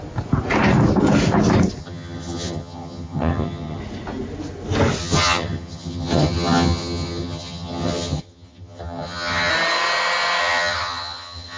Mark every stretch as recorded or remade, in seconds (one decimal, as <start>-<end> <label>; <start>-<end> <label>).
0.0-1.8 recorded; 1.8-3.8 remade; 3.8-5.0 recorded; 5.0-9.5 remade; 9.5-10.4 recorded; 10.4-11.6 remade